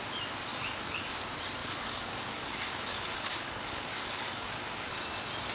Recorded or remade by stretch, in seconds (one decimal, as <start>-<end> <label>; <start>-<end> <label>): 0.0-0.5 recorded; 0.5-1.1 remade; 1.1-1.6 recorded; 1.6-4.9 remade; 4.9-5.5 recorded